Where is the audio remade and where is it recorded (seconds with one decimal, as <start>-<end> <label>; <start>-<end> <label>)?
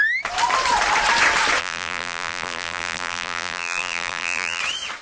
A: 0.0-1.6 recorded; 1.6-4.6 remade; 4.6-5.0 recorded